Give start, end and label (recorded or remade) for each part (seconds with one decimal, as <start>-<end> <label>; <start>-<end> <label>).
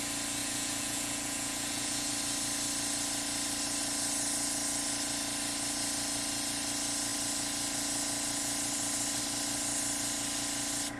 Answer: 0.0-0.4 recorded; 0.4-2.1 remade; 2.1-11.0 recorded